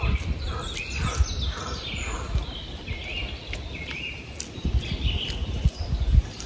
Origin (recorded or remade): recorded